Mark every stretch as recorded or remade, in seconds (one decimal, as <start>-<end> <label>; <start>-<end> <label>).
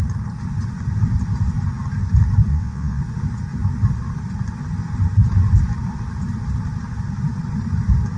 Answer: 0.0-2.5 recorded; 2.5-3.0 remade; 3.0-8.2 recorded